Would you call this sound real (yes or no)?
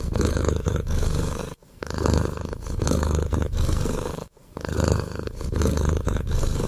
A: no